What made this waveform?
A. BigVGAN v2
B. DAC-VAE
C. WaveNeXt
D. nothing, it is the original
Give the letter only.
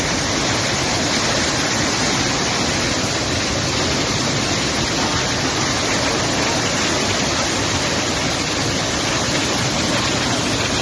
D